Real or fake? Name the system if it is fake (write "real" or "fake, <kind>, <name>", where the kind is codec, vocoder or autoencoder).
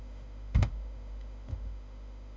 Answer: fake, autoencoder, DAC-VAE